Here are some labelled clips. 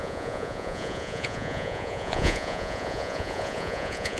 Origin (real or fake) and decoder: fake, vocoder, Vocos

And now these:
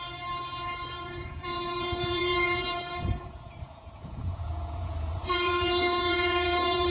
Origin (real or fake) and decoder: fake, vocoder, Vocos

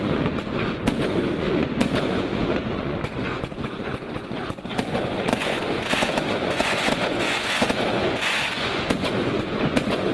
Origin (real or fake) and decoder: fake, vocoder, Vocos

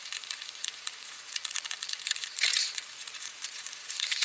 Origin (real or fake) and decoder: fake, vocoder, Vocos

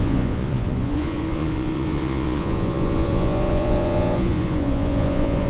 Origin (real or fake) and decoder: fake, vocoder, Vocos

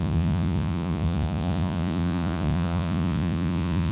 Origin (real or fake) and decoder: fake, vocoder, Vocos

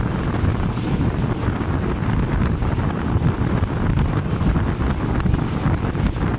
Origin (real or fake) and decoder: real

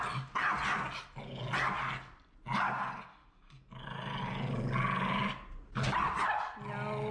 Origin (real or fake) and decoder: real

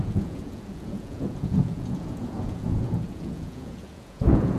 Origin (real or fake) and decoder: fake, vocoder, Vocos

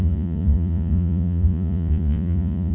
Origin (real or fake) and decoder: fake, vocoder, Vocos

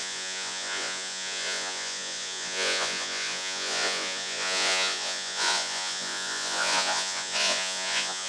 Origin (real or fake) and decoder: fake, vocoder, Vocos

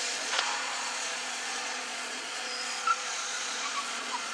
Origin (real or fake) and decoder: fake, vocoder, Vocos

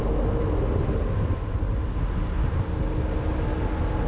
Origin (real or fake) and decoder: real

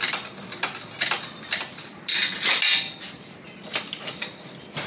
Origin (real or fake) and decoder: real